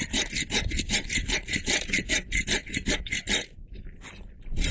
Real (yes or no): no